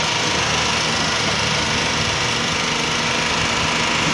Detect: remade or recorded recorded